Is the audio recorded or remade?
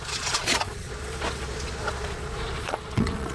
remade